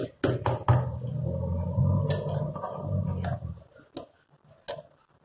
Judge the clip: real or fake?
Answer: real